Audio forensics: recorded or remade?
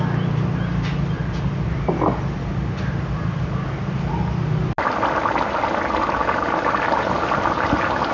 recorded